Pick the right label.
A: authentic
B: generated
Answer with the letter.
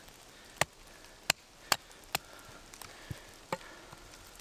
A